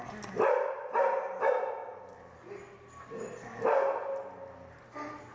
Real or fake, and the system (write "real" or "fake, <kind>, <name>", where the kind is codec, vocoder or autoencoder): real